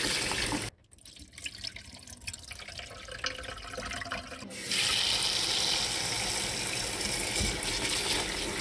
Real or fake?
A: real